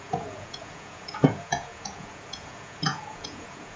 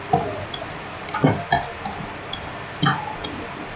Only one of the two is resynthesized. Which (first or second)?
first